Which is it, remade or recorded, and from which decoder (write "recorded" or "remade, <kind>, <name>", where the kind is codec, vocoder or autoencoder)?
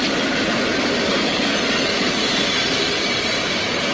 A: recorded